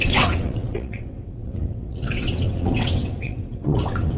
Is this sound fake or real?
fake